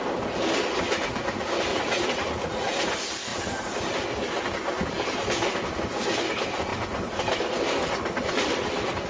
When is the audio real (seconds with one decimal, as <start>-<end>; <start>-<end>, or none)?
0.0-1.7; 2.8-9.1